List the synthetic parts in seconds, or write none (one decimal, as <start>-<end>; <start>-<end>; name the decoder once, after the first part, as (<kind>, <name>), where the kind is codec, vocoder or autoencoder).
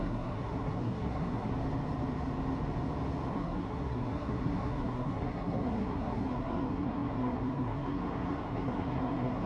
0.0-1.5 (codec, SNAC); 3.3-9.5